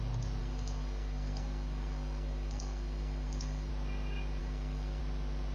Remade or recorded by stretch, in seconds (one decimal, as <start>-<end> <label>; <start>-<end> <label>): 0.0-0.4 recorded; 0.4-3.7 remade; 3.7-4.4 recorded; 4.4-5.0 remade; 5.0-5.5 recorded